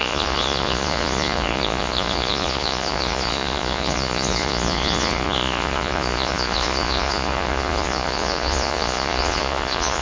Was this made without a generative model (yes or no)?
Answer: no